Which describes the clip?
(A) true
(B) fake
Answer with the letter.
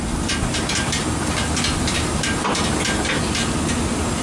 A